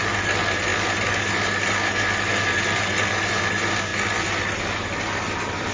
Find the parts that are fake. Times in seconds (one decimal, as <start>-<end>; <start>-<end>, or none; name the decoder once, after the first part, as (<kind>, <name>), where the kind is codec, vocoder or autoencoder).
none